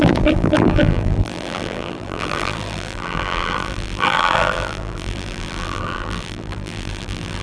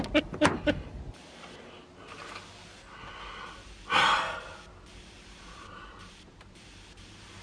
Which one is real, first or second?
second